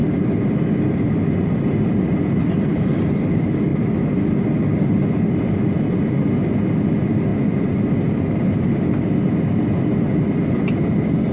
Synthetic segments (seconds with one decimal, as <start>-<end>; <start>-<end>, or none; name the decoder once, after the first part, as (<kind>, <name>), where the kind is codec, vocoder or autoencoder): none